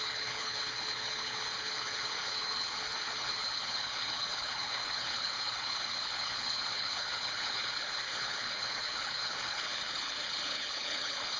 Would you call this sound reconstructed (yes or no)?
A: yes